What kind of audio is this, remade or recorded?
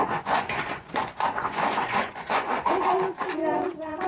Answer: remade